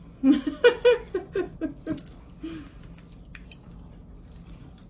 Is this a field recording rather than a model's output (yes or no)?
yes